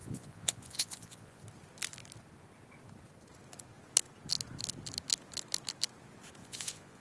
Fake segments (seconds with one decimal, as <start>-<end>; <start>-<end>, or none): 0.0-1.4; 6.4-7.0

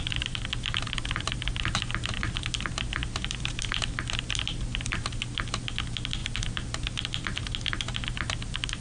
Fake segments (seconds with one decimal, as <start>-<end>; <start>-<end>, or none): none